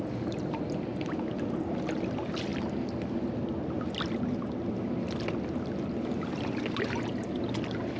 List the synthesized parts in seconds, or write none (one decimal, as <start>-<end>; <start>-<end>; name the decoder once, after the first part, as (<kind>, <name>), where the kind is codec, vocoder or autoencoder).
none